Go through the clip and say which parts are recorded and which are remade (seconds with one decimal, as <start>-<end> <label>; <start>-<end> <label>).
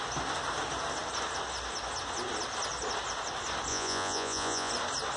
0.0-3.7 recorded; 3.7-4.7 remade; 4.7-5.2 recorded